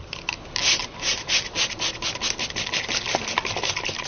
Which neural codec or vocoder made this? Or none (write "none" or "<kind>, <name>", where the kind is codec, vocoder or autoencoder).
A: none